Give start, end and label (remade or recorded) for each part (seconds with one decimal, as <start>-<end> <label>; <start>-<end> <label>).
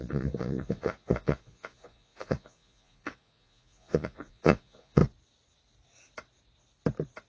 0.0-5.0 remade; 5.0-7.3 recorded